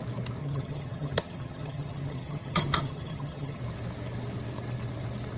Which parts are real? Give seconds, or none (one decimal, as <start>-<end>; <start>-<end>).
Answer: 0.0-0.4; 3.6-5.4